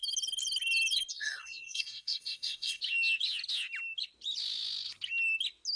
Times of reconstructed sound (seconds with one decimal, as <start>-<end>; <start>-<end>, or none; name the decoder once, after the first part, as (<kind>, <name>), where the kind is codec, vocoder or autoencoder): 1.1-2.8 (codec, SNAC)